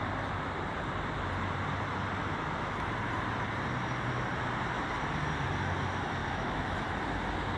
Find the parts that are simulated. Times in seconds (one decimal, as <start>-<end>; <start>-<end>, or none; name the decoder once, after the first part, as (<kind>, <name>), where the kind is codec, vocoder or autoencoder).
2.2-2.8 (autoencoder, DAC-VAE); 6.2-6.8